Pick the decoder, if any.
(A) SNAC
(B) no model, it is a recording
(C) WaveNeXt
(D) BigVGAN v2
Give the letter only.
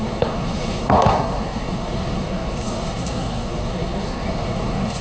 A